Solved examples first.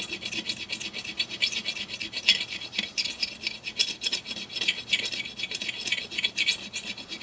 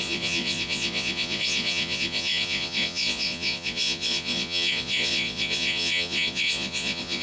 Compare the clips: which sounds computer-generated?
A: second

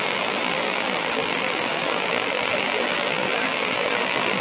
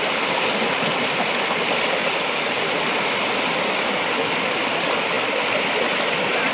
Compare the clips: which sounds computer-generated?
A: first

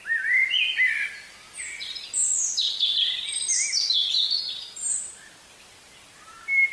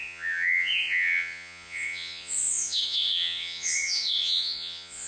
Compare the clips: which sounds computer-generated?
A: second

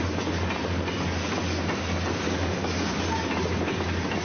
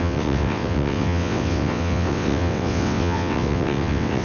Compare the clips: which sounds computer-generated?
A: second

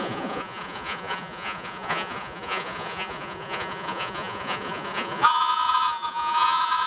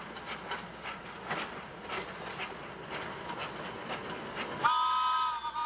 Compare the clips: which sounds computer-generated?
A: first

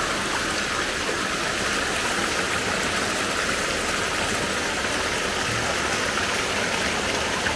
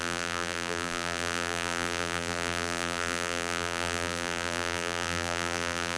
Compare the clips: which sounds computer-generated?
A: second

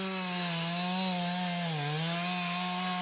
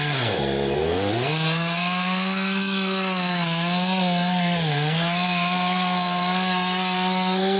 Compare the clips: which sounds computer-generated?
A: second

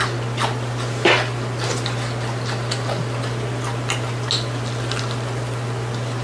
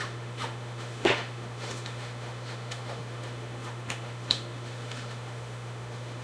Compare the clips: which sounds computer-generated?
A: second